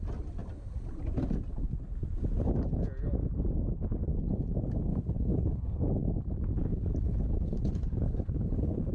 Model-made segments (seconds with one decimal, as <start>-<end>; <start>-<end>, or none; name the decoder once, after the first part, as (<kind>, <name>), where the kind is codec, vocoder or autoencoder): 4.9-5.8 (codec, HILCodec); 6.6-8.9